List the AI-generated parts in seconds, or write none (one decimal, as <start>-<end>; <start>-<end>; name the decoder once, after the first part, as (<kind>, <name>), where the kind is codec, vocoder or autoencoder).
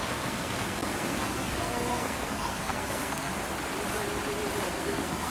0.0-3.3 (codec, SNAC); 4.7-5.3